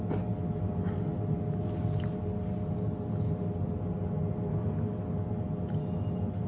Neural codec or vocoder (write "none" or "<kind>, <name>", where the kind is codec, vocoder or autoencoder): none